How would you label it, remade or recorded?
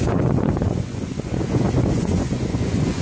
remade